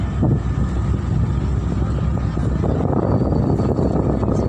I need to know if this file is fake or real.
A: real